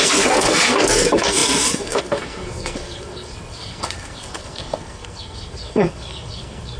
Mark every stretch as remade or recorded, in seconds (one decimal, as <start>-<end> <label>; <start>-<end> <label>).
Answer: 0.0-6.8 remade